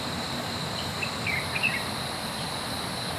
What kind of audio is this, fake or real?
fake